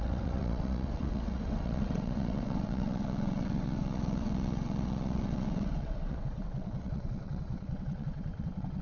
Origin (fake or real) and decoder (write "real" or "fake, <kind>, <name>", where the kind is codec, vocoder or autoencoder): fake, vocoder, WaveNeXt